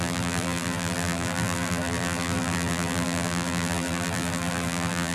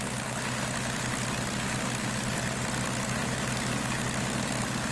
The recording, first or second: second